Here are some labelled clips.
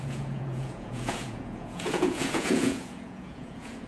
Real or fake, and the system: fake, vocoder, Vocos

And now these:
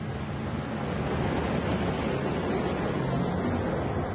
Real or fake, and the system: real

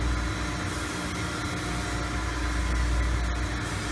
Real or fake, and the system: real